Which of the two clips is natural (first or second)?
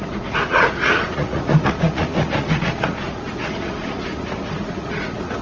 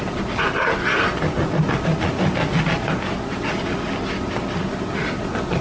second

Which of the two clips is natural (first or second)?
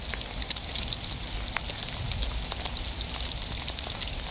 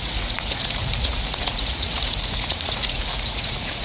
first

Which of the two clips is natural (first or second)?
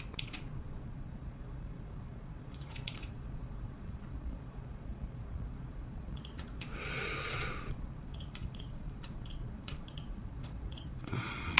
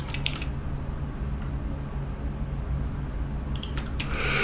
second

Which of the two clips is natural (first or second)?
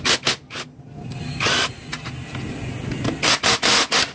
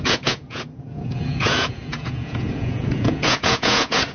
first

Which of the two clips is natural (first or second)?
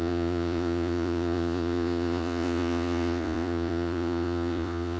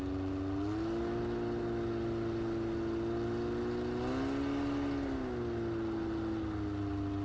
second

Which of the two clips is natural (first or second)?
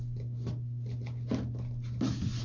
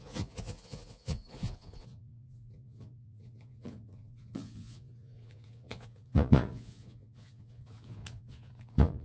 first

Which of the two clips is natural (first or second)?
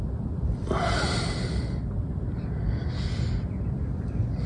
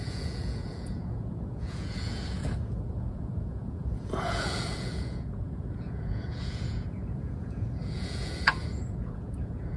first